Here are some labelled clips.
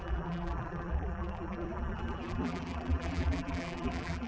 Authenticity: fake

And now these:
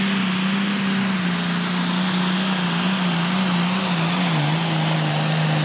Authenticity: real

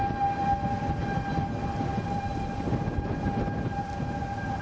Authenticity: real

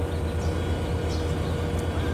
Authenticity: real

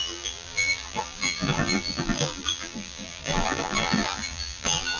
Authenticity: fake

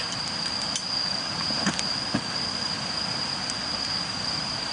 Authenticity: real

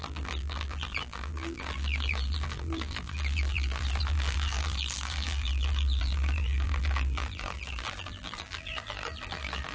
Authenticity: fake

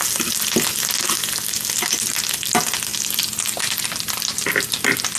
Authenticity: real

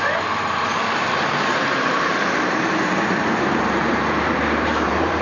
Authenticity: fake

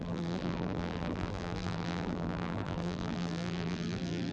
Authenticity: fake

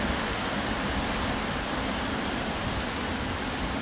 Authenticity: real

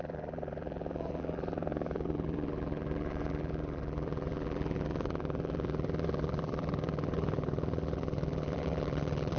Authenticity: fake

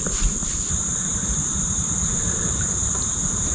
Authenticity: fake